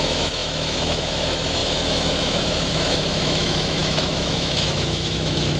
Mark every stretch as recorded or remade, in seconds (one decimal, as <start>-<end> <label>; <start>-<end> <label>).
0.0-5.6 remade